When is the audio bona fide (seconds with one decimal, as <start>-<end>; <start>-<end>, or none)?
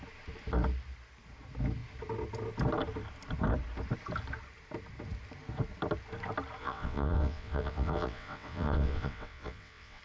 0.0-6.6